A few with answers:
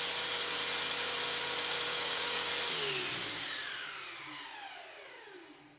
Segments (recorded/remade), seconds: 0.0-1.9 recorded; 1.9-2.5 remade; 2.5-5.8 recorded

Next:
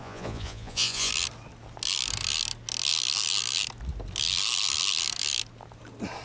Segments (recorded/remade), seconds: 0.0-1.1 remade; 1.1-6.2 recorded

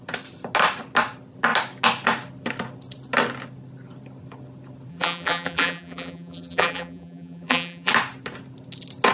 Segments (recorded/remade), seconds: 0.0-4.9 recorded; 4.9-7.9 remade; 7.9-9.1 recorded